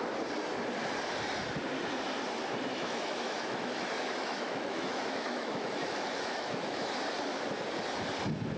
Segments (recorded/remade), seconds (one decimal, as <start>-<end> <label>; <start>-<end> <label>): 0.0-2.7 recorded; 2.7-6.9 remade; 6.9-8.6 recorded